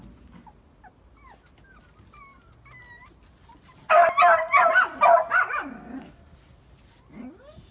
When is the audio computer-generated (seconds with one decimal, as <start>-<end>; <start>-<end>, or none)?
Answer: none